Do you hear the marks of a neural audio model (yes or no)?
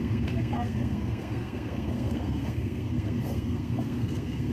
yes